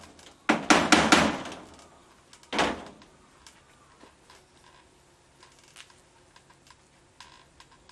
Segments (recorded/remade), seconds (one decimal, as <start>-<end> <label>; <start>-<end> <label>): 0.0-7.9 recorded